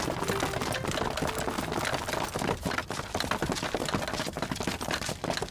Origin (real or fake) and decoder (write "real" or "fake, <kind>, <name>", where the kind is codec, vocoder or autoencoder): real